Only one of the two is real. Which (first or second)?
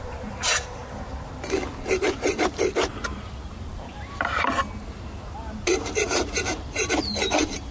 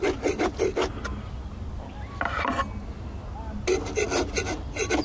second